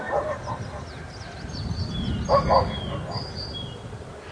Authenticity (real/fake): real